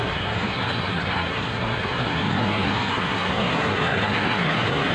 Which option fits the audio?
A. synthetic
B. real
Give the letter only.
A